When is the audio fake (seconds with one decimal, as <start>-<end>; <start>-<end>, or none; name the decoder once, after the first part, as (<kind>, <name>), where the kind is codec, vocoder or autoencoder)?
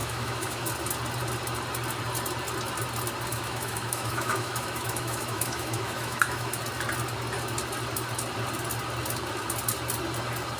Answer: 0.0-0.7 (autoencoder, DAC-VAE); 3.3-6.6